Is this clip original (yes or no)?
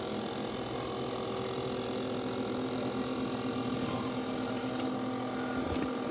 yes